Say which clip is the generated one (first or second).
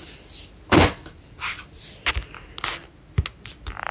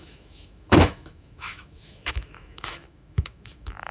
second